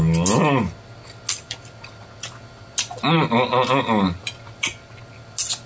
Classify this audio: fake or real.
real